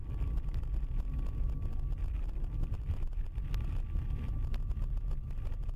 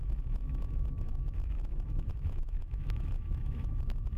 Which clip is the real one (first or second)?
first